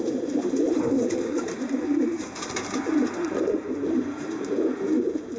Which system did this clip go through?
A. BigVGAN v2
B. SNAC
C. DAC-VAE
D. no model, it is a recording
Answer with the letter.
A